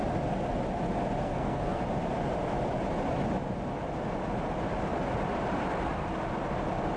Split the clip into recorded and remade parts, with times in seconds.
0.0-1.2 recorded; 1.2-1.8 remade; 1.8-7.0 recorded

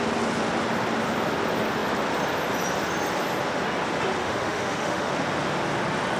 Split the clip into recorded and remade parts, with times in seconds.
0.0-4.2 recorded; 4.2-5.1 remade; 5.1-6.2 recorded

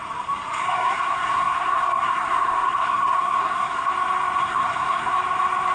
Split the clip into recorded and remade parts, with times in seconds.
0.0-0.6 recorded; 0.6-3.9 remade; 3.9-4.4 recorded; 4.4-5.1 remade; 5.1-5.7 recorded